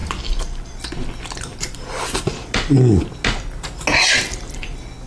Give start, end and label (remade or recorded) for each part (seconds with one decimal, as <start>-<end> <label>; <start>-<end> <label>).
0.0-1.5 recorded; 1.5-2.5 remade; 2.5-5.1 recorded